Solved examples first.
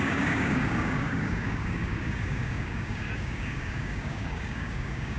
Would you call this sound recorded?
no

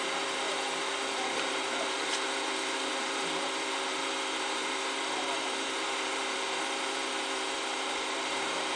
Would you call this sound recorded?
no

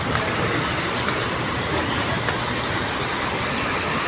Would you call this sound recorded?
no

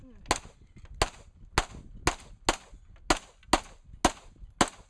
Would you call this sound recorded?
yes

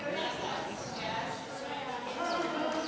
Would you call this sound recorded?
yes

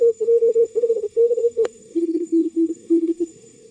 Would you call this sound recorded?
no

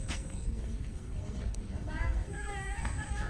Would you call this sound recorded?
no